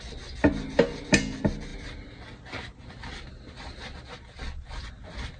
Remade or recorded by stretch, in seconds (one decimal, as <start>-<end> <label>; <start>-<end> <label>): 0.0-5.4 recorded